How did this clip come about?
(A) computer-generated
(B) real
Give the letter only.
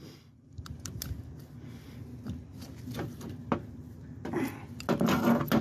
B